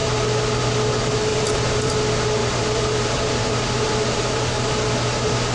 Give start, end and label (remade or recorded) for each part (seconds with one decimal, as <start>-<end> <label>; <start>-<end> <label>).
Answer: 0.0-1.3 recorded; 1.3-1.9 remade; 1.9-2.4 recorded; 2.4-4.7 remade; 4.7-5.5 recorded